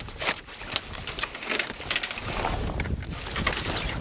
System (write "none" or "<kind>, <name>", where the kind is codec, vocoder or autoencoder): none